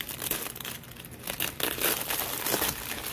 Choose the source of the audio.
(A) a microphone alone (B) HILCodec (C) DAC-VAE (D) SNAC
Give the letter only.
A